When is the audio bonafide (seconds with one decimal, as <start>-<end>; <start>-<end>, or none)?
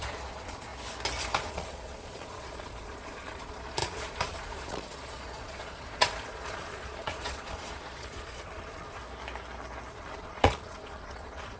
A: 0.7-1.3; 9.0-9.9